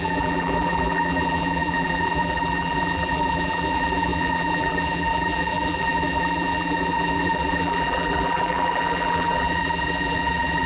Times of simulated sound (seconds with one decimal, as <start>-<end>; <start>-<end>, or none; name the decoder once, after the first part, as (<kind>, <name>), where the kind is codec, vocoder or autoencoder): 0.0-10.7 (vocoder, BigVGAN v2)